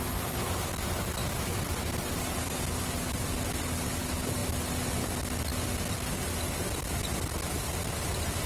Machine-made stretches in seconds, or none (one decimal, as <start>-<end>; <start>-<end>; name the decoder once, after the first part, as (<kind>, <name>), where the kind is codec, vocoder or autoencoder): none